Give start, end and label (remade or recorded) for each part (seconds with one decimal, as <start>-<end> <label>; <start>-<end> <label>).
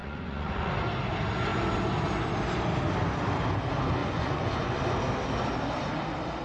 0.0-0.7 remade; 0.7-4.0 recorded; 4.0-4.8 remade; 4.8-6.4 recorded